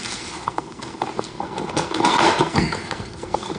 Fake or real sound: fake